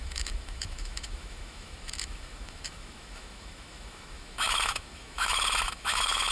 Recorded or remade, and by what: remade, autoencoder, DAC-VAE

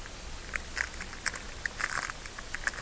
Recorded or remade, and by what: recorded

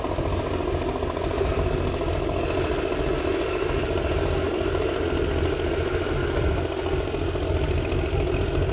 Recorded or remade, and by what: recorded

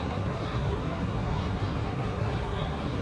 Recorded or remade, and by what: remade, codec, SNAC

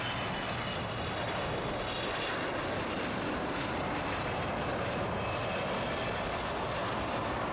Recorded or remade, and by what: recorded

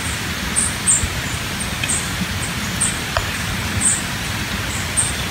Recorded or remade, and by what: recorded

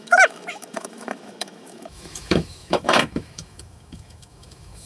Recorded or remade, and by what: remade, autoencoder, DAC-VAE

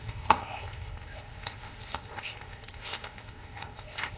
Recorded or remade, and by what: remade, codec, ZipCodec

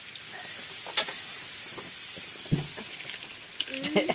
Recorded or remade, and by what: recorded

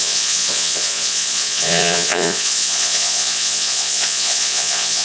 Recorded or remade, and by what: remade, vocoder, Vocos